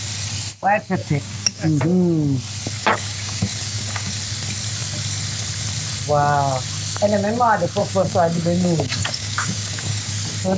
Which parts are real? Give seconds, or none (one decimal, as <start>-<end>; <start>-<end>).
0.0-1.0; 1.8-2.8; 4.1-7.8; 10.1-10.6